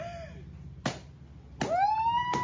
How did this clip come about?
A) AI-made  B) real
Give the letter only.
B